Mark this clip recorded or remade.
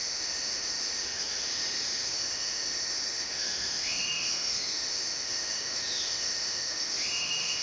remade